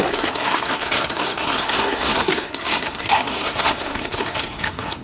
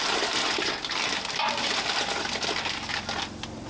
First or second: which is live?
second